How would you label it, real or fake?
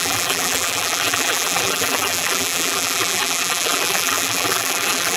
fake